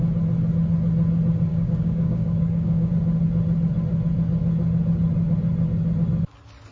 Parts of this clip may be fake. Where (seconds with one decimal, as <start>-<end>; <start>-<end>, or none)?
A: 1.5-2.9